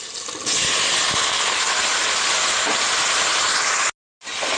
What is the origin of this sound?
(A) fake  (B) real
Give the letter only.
B